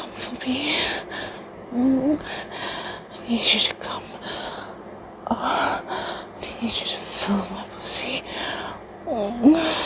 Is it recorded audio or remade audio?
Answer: recorded